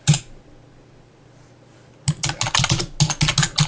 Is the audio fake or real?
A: real